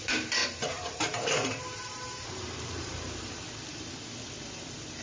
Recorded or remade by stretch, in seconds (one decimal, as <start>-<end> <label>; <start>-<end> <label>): 0.0-0.4 recorded; 0.4-3.4 remade; 3.4-5.0 recorded